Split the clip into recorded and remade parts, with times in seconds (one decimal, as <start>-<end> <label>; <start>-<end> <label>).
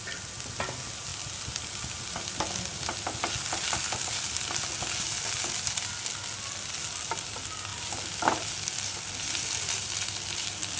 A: 0.0-10.8 recorded